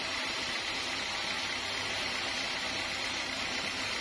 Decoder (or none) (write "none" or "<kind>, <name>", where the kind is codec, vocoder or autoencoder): none